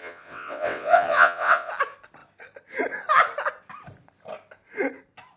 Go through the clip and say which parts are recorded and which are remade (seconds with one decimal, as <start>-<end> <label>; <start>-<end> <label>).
0.0-1.7 remade; 1.7-5.4 recorded